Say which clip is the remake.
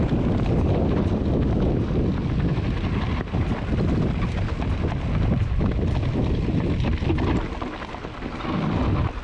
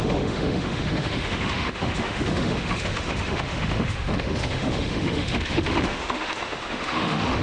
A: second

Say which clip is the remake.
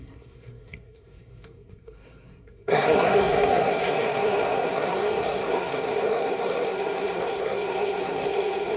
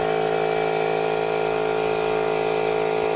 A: first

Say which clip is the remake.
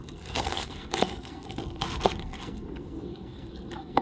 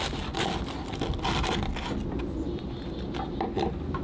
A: first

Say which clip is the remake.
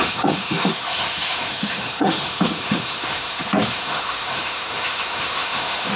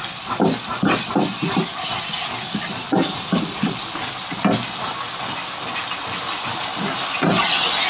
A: first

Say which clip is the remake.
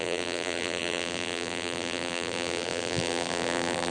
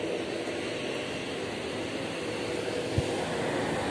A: first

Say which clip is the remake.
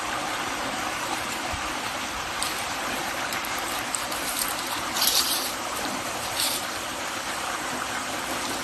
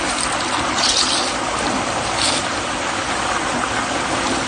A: first